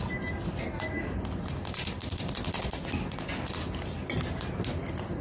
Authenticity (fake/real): real